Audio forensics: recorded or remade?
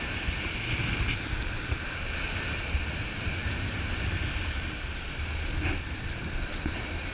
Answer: recorded